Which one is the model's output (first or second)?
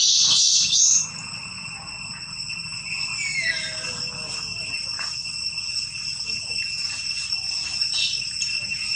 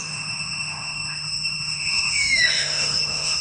second